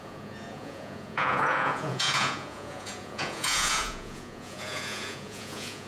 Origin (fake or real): fake